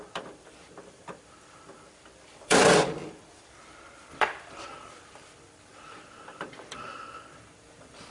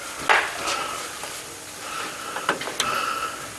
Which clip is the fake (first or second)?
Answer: first